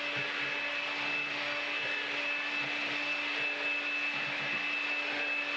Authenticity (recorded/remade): recorded